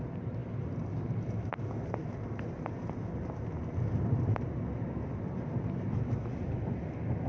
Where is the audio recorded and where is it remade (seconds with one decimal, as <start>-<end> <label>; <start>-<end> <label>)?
0.0-7.3 recorded